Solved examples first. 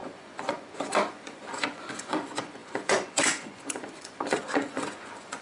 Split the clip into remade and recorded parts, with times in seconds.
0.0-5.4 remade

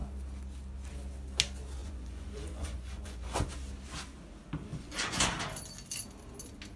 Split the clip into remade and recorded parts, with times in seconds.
0.0-1.8 recorded; 1.8-3.5 remade; 3.5-4.7 recorded; 4.7-5.3 remade; 5.3-6.8 recorded

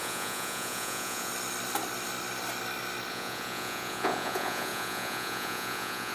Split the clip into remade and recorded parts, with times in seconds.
0.0-1.3 remade; 1.3-3.1 recorded; 3.1-6.1 remade

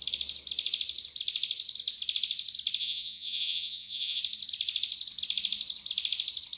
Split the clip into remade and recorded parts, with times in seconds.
0.0-2.8 recorded; 2.8-4.2 remade; 4.2-6.6 recorded